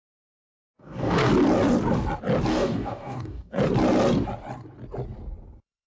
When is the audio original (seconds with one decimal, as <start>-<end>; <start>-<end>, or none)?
1.3-2.5; 3.6-5.9